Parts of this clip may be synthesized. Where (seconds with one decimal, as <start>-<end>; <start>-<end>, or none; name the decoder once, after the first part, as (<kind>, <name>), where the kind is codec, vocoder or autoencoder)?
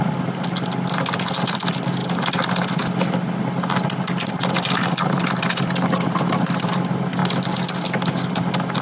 none